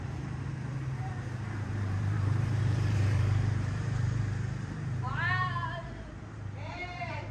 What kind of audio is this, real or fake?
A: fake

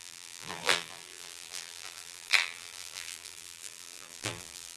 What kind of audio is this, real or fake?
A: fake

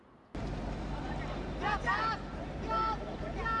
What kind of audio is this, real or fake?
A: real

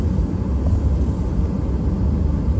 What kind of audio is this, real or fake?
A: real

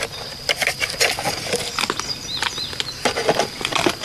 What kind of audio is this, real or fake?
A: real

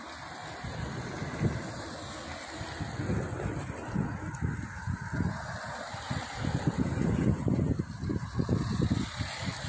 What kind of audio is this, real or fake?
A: real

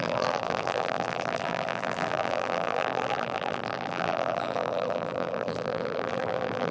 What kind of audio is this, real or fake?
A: fake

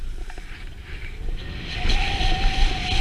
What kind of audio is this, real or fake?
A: real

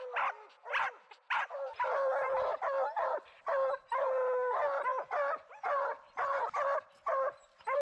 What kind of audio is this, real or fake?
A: real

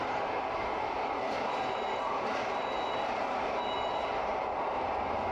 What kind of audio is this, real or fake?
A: fake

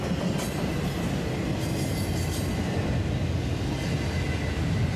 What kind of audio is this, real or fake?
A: real